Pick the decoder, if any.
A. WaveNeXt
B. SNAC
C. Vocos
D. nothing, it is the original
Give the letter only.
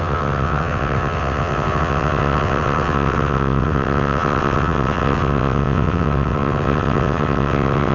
A